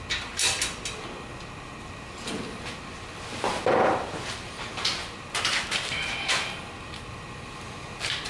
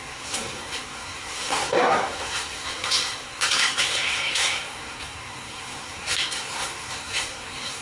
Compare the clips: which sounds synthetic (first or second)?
second